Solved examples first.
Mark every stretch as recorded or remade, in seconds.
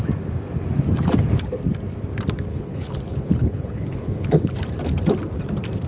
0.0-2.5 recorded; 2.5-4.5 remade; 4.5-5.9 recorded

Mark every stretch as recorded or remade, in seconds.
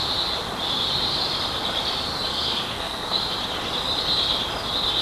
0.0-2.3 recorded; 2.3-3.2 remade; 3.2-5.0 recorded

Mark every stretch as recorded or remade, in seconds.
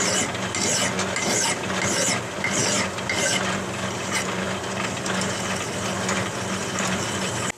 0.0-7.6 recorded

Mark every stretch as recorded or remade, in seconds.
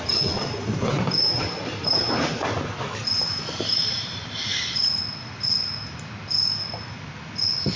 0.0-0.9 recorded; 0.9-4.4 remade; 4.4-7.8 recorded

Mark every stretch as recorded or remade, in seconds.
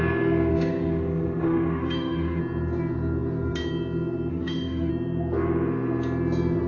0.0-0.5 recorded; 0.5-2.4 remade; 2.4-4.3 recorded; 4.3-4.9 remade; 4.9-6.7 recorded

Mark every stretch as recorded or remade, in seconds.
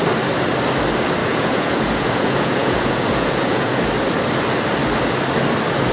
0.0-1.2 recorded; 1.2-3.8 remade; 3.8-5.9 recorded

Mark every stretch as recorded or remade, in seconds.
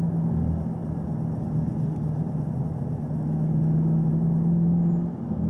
0.0-5.5 recorded